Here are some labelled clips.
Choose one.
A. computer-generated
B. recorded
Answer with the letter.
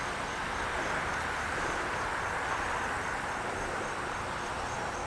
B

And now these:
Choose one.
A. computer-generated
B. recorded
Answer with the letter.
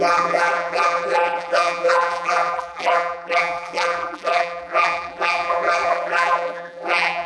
A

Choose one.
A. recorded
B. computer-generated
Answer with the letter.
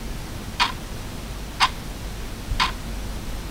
A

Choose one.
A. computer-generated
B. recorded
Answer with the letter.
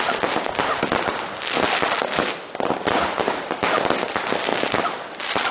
B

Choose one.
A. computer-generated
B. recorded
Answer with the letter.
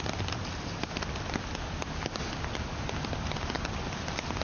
A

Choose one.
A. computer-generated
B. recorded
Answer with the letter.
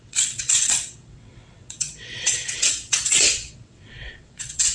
A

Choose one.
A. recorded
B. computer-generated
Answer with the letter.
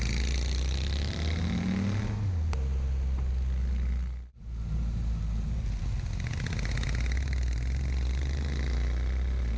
A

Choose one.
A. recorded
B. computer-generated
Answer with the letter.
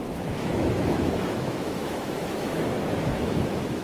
B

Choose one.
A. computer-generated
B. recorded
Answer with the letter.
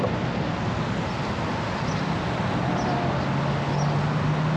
B